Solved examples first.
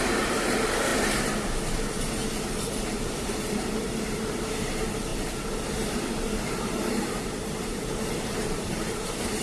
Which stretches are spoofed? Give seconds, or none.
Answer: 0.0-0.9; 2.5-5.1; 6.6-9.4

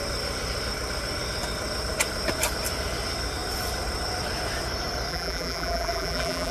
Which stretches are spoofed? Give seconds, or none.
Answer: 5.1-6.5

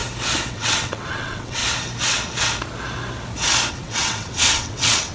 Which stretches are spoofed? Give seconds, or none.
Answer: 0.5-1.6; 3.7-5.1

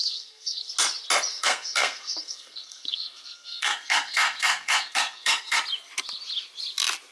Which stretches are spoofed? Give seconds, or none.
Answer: 0.0-0.7; 1.3-5.6

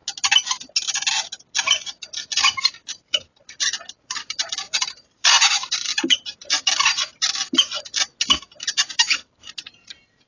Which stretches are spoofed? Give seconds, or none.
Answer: 2.9-3.3; 4.0-5.9; 6.4-7.4; 8.6-10.3

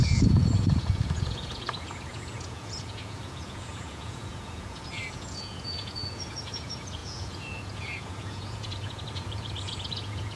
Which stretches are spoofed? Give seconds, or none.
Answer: 0.0-10.4